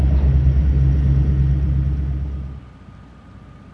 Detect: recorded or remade recorded